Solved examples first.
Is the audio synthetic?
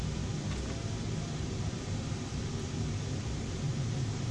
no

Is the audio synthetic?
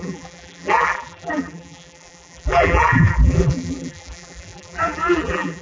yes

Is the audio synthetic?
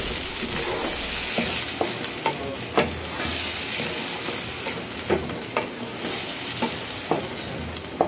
no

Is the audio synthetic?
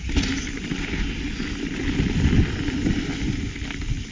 no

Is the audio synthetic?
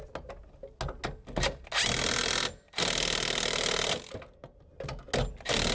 no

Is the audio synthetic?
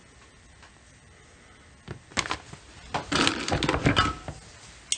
no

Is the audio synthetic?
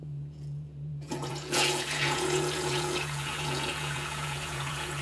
yes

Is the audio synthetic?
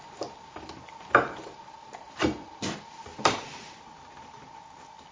no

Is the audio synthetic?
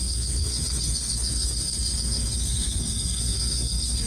yes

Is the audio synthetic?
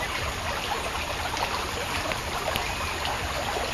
no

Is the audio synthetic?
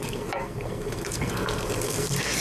yes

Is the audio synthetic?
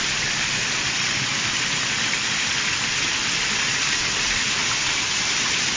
no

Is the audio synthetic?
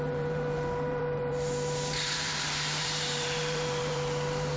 yes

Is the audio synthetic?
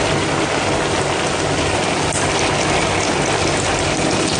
no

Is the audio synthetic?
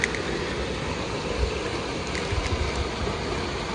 no